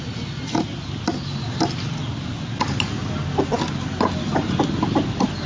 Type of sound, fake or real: real